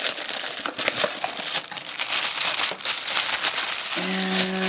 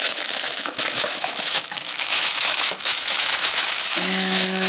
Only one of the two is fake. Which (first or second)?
second